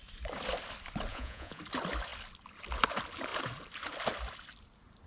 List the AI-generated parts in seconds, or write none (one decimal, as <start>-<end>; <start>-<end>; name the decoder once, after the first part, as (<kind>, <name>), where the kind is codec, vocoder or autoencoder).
1.1-1.6 (vocoder, Vocos)